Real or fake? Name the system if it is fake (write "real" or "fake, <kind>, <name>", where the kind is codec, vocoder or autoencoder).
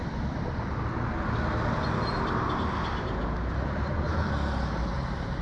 real